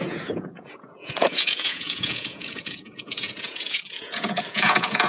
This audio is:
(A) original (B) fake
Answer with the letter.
B